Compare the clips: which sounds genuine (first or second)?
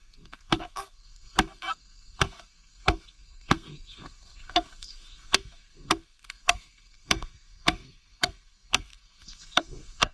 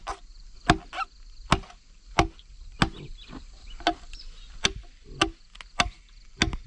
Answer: second